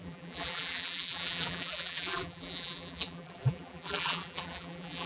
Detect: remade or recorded remade